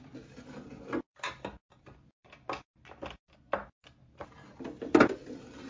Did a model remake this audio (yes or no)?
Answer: no